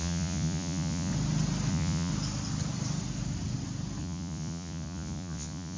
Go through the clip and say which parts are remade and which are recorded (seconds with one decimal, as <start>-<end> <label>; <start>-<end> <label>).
0.0-1.1 remade; 1.1-1.7 recorded; 1.7-2.1 remade; 2.1-4.0 recorded; 4.0-5.8 remade

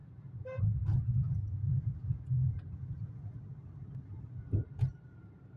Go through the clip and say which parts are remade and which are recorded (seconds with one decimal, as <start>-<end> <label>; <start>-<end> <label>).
0.0-3.4 remade; 3.4-5.6 recorded

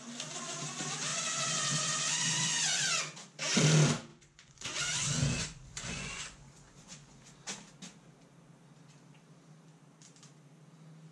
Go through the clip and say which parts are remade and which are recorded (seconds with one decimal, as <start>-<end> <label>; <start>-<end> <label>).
0.0-1.1 recorded; 1.1-3.0 remade; 3.0-4.1 recorded; 4.1-7.3 remade; 7.3-11.1 recorded

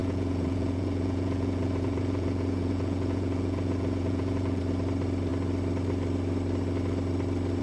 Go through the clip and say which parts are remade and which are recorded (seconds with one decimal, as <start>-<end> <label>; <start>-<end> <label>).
0.0-4.6 remade; 4.6-7.6 recorded

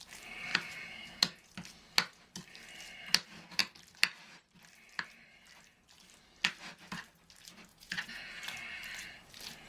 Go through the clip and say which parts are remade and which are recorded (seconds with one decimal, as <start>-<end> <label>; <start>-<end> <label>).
0.0-0.5 recorded; 0.5-1.5 remade; 1.5-7.7 recorded; 7.7-8.4 remade; 8.4-9.7 recorded